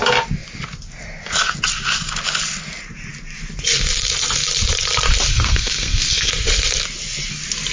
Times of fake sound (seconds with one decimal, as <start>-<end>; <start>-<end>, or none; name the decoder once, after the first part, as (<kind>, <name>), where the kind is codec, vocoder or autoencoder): 5.3-6.3 (codec, SNAC)